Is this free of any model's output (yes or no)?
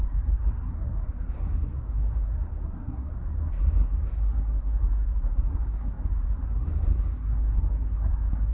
no